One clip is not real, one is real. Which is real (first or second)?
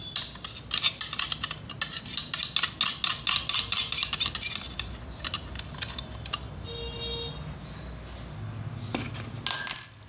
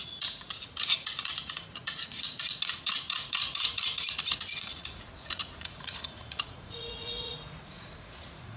first